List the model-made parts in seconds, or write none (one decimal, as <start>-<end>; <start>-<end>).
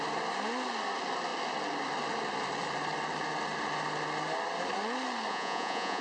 5.3-6.0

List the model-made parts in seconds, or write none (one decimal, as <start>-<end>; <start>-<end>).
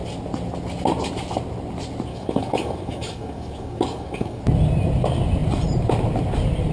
2.1-4.4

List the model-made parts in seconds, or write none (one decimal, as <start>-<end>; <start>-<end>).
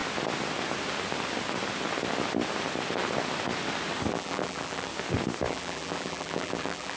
4.1-4.9; 5.5-7.0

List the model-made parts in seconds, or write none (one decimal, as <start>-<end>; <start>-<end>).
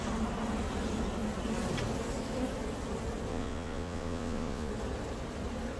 3.3-4.7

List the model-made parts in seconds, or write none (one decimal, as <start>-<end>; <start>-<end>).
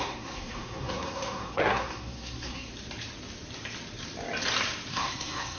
0.0-2.7; 4.9-5.6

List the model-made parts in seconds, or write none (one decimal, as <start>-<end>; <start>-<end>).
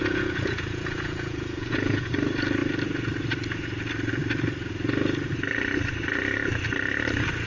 0.0-2.1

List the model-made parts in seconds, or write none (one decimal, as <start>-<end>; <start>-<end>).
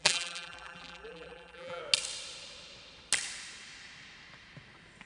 0.0-1.8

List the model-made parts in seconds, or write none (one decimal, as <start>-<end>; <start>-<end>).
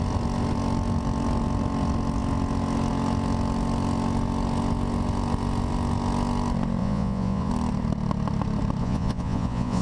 6.8-7.5; 8.8-9.8